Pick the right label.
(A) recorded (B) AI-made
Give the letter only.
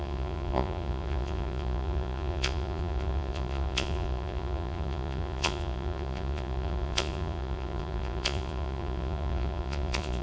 B